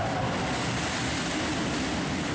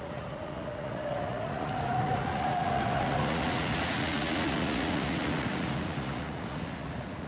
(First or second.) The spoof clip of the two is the second